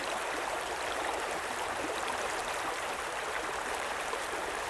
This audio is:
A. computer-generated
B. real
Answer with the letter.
A